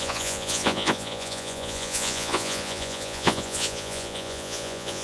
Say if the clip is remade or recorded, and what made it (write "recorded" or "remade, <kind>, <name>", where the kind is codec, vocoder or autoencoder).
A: remade, vocoder, Vocos